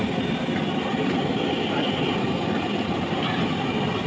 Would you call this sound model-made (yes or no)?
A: no